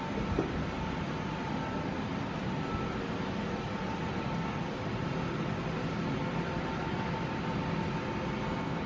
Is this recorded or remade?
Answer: recorded